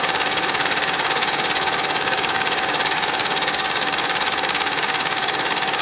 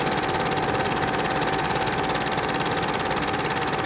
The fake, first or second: first